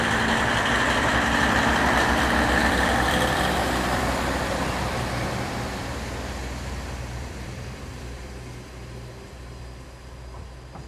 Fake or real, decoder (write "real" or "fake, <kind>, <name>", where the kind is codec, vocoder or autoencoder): fake, vocoder, BigVGAN v2